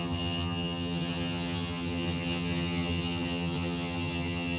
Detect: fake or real fake